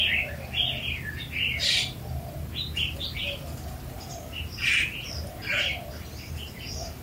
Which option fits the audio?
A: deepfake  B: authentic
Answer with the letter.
A